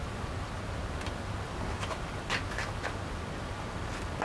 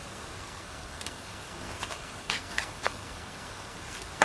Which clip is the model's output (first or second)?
second